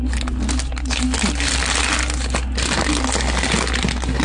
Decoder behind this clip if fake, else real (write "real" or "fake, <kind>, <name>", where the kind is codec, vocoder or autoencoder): real